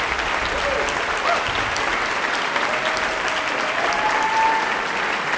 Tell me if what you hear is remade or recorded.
recorded